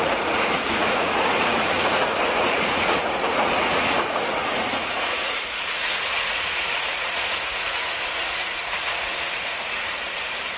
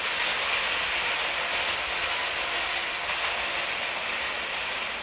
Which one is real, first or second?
second